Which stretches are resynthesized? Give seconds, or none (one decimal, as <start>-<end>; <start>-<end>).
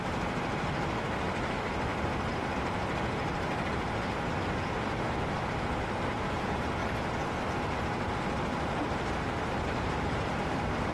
0.0-10.9